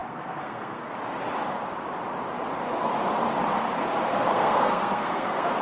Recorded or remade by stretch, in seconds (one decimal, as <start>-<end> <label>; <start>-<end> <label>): 0.0-0.9 remade; 0.9-4.1 recorded; 4.1-5.6 remade